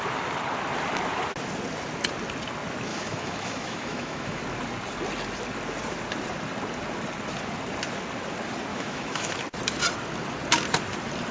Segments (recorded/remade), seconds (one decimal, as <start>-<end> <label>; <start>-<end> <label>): 0.0-2.9 recorded; 2.9-4.4 remade; 4.4-8.7 recorded; 8.7-9.3 remade; 9.3-11.3 recorded